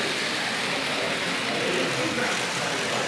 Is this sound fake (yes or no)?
no